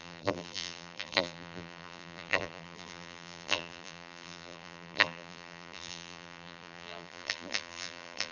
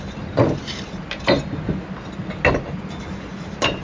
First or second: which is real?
second